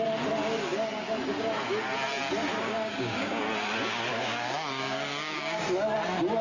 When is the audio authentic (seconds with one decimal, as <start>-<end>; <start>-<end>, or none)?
0.0-2.5; 3.4-4.1; 5.6-6.4